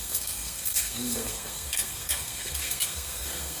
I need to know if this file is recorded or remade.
remade